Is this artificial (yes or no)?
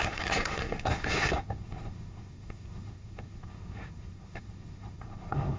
yes